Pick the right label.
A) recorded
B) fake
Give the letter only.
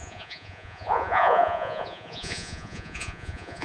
B